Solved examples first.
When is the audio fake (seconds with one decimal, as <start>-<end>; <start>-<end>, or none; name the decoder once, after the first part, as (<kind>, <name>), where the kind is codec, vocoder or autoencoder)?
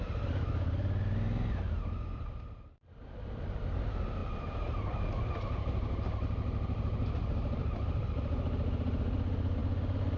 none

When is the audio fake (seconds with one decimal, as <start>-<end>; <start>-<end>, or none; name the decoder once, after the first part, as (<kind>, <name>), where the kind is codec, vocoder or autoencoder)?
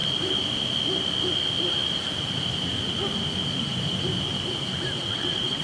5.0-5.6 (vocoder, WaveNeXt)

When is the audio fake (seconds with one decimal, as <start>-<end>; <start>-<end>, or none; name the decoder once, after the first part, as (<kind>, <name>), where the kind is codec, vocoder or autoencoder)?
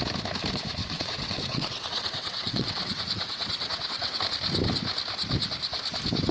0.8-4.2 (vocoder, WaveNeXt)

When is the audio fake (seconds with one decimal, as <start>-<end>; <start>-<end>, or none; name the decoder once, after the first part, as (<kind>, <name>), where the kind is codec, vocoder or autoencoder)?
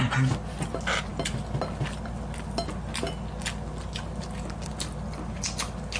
none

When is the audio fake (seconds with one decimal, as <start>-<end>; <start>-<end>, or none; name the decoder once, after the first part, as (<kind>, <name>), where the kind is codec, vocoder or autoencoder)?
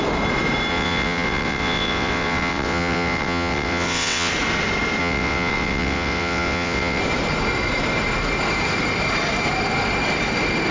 0.7-4.3 (vocoder, WaveNeXt); 5.0-7.0